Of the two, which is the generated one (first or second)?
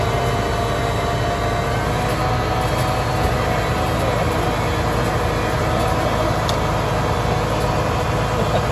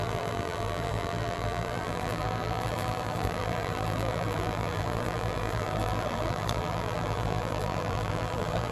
second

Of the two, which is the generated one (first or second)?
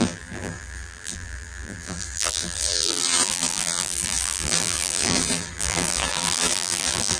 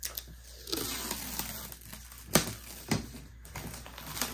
first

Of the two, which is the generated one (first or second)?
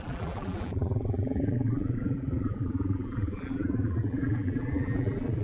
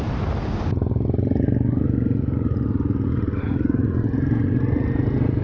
first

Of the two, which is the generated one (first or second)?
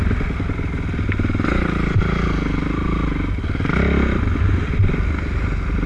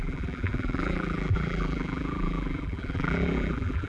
second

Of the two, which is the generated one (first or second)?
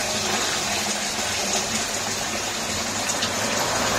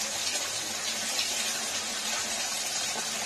first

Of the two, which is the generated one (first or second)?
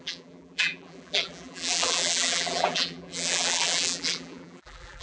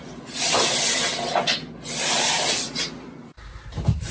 first